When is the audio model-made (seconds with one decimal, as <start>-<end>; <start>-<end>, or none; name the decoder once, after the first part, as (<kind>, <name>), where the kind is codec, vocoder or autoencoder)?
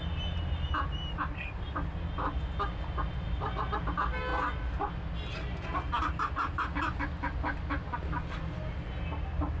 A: none